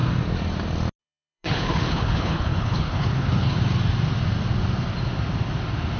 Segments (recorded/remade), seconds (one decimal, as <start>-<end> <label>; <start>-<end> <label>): 0.0-1.0 recorded; 1.0-3.6 remade; 3.6-6.0 recorded